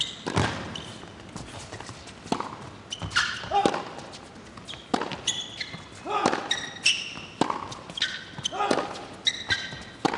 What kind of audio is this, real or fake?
real